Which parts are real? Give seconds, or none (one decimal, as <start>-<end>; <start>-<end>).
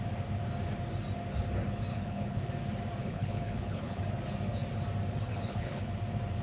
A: 0.0-1.9; 2.5-3.0; 4.0-5.3; 5.9-6.4